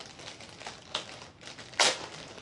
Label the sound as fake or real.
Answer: real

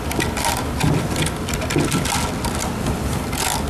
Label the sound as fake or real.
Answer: real